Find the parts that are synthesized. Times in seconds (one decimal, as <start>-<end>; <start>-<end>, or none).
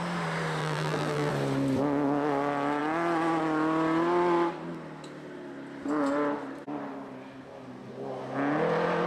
0.6-1.3